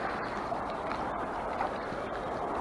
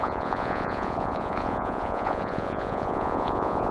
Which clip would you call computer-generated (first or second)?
second